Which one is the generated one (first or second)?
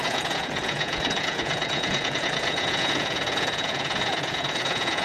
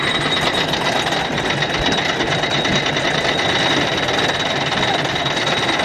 first